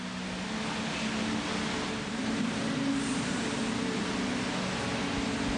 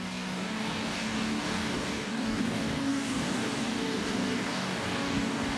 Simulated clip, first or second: second